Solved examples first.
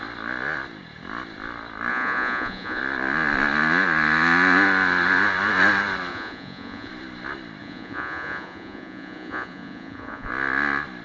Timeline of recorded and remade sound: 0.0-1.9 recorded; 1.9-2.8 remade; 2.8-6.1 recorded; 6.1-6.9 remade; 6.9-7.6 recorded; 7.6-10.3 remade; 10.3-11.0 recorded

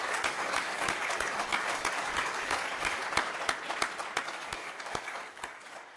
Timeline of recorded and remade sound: 0.0-3.0 remade; 3.0-4.2 recorded; 4.2-6.0 remade

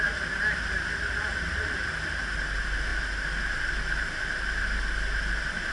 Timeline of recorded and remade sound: 0.0-5.7 recorded

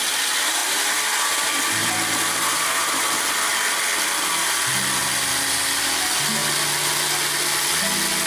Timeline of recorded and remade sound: 0.0-0.6 recorded; 0.6-4.3 remade; 4.3-5.0 recorded; 5.0-6.0 remade; 6.0-8.3 recorded

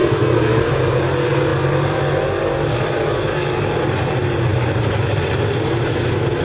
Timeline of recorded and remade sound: 0.0-0.7 remade; 0.7-6.4 recorded

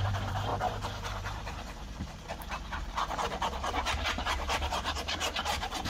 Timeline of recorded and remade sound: 0.0-5.9 remade